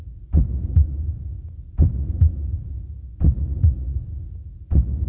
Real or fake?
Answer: fake